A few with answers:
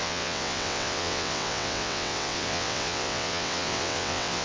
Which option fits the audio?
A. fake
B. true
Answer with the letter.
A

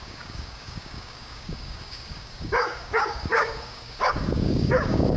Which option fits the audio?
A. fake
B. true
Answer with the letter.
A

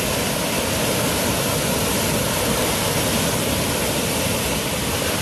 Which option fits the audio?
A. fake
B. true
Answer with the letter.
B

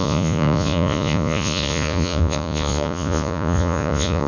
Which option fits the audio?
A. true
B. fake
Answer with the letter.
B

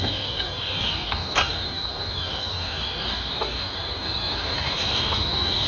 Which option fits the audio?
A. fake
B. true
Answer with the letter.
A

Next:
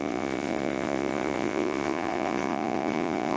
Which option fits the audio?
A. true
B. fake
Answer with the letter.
B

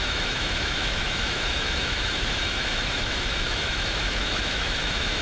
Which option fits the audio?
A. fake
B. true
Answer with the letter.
A